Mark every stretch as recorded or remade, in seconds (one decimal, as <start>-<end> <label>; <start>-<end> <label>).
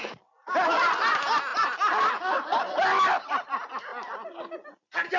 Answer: 0.0-5.2 recorded